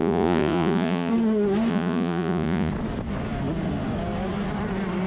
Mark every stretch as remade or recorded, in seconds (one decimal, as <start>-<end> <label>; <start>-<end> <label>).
0.0-1.1 remade; 1.1-1.7 recorded; 1.7-2.7 remade; 2.7-5.1 recorded